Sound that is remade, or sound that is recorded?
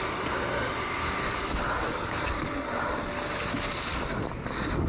recorded